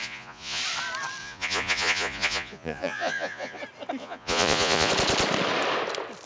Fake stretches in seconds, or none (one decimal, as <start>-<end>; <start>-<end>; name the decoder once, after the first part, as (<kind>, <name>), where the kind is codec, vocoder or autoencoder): 0.0-0.6 (vocoder, Vocos); 1.2-3.6; 4.0-4.9